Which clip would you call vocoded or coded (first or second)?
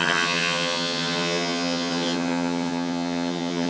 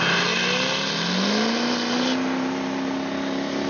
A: first